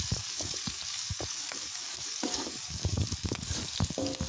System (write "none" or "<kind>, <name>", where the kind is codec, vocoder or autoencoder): codec, DAC